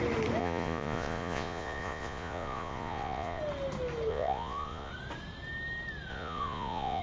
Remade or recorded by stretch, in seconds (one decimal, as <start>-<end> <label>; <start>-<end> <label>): 0.0-0.4 recorded; 0.4-3.4 remade; 3.4-4.1 recorded; 4.1-4.9 remade; 4.9-6.1 recorded; 6.1-7.0 remade